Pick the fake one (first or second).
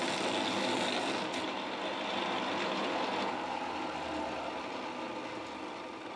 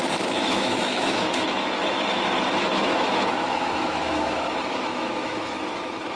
second